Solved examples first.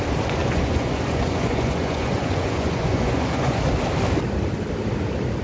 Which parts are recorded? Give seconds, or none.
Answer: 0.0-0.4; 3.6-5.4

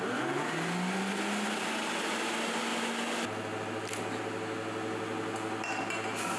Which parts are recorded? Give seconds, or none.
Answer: 0.0-6.4

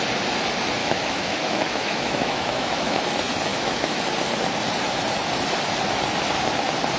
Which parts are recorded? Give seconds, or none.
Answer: 0.0-0.8; 3.0-3.5; 4.0-7.0

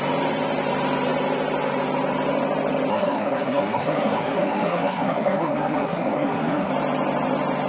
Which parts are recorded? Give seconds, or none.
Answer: 0.0-2.9; 6.7-7.7

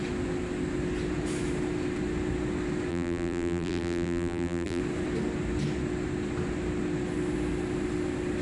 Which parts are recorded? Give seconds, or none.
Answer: 0.0-2.9; 4.8-8.4

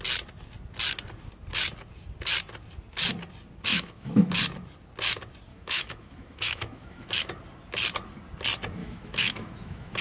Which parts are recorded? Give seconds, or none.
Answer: 0.0-3.7; 4.3-5.5; 7.3-8.8